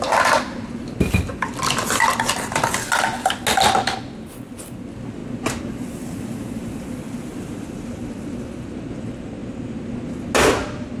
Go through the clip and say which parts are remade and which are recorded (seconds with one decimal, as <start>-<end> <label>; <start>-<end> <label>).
0.0-11.0 recorded